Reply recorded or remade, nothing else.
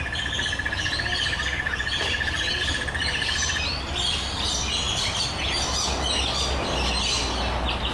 recorded